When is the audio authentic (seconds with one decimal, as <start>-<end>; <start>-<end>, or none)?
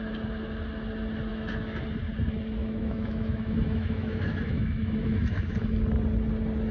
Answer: 0.0-1.3; 1.8-2.6; 5.6-6.7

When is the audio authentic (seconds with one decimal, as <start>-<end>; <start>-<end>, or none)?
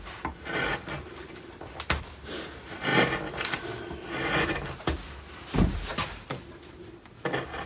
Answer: 0.0-7.7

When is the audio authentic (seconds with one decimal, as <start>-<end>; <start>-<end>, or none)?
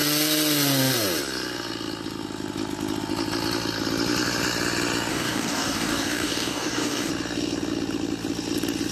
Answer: 0.0-5.1; 7.1-8.9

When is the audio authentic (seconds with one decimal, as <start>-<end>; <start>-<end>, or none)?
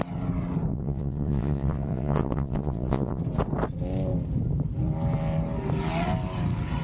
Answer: 0.0-0.7; 3.2-6.8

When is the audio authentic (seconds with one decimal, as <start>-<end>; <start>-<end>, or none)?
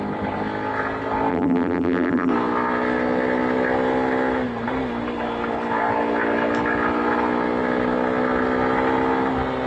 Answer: 0.0-1.3; 2.3-9.7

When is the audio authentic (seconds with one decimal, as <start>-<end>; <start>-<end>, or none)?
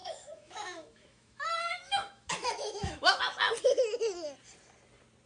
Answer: 3.2-5.3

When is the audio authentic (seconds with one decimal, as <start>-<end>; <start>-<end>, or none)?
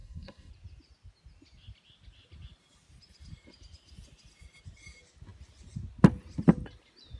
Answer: 0.5-7.2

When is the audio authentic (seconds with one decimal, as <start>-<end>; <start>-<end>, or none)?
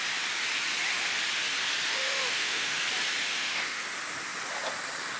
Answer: 0.0-1.9; 2.8-3.2; 3.8-5.2